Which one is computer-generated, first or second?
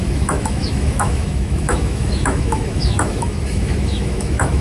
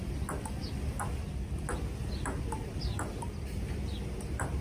first